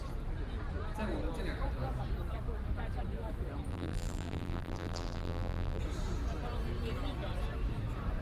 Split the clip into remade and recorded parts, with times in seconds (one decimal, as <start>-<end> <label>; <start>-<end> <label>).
0.0-3.7 recorded; 3.7-5.8 remade; 5.8-8.2 recorded